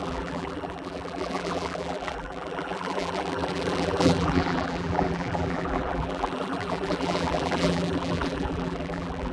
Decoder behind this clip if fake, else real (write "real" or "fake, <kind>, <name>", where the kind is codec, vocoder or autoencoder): fake, vocoder, BigVGAN v2